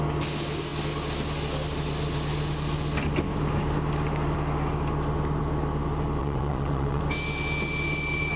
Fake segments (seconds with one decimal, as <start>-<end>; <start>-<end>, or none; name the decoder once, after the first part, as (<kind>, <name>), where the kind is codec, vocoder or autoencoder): 6.2-7.0 (vocoder, WaveNeXt)